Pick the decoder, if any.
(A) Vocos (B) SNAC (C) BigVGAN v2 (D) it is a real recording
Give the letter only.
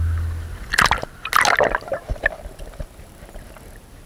D